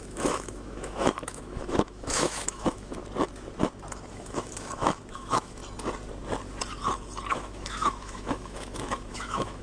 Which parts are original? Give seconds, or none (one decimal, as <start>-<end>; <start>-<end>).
3.0-4.1; 5.6-7.3